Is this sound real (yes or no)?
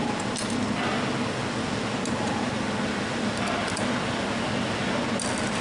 yes